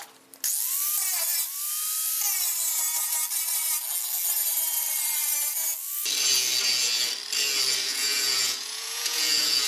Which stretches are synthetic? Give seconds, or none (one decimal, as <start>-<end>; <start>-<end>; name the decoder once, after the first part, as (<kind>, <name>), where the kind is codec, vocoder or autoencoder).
7.9-9.7 (vocoder, Vocos)